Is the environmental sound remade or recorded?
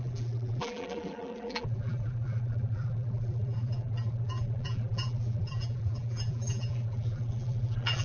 remade